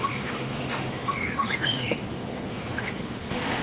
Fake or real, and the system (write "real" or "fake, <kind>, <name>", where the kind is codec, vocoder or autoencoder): fake, autoencoder, DAC-VAE